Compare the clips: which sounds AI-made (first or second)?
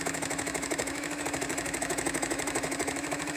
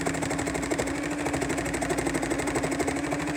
first